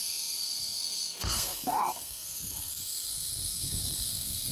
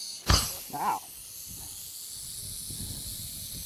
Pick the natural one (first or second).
second